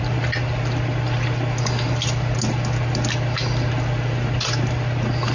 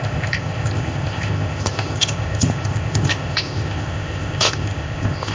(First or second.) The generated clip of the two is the second